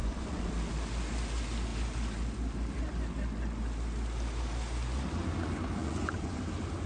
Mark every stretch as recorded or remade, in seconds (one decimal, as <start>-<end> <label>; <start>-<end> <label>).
0.0-0.5 remade; 0.5-5.8 recorded; 5.8-6.4 remade; 6.4-6.9 recorded